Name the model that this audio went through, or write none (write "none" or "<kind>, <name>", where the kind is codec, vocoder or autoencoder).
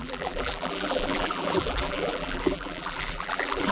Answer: vocoder, BigVGAN v2